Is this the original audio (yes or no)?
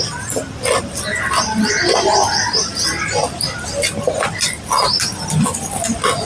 yes